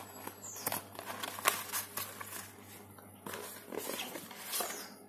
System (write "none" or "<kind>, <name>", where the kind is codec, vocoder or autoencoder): none